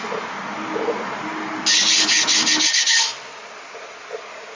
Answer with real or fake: real